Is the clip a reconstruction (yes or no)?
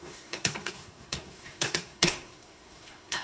yes